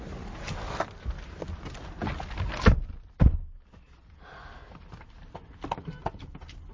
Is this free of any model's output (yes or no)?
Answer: yes